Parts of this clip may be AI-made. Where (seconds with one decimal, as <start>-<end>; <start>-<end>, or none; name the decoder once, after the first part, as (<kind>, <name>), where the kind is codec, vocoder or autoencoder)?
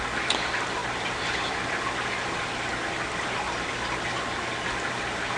none